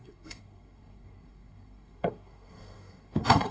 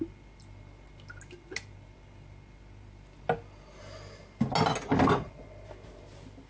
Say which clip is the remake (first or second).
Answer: first